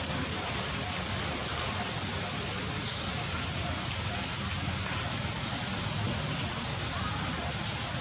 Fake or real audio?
real